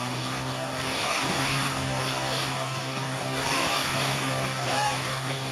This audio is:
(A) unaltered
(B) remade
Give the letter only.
B